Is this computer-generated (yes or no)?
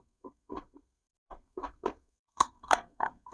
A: yes